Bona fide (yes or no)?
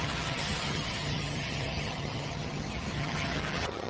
no